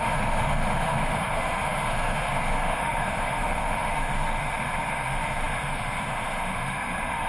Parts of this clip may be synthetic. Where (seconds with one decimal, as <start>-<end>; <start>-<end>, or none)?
0.0-7.3